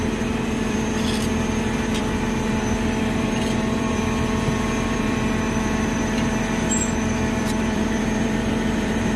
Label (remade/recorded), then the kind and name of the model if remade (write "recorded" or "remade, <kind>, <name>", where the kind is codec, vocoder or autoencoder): remade, vocoder, BigVGAN v2